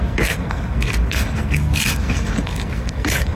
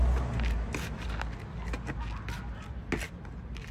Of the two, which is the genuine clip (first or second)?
second